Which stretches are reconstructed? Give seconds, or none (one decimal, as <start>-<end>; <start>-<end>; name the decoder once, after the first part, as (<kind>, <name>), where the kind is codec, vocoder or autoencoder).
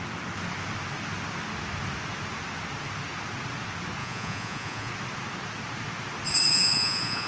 4.0-4.9 (vocoder, Vocos); 6.5-7.3